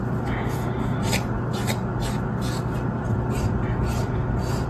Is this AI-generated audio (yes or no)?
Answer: no